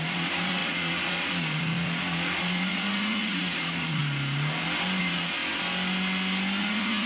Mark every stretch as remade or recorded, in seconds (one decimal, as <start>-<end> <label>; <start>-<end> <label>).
0.0-4.0 remade; 4.0-5.0 recorded; 5.0-5.4 remade; 5.4-6.6 recorded; 6.6-7.1 remade